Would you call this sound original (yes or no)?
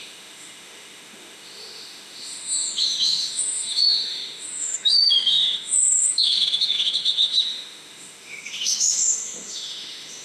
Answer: no